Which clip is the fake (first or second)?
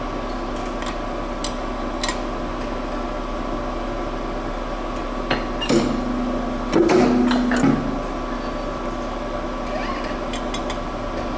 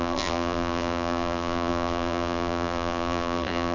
second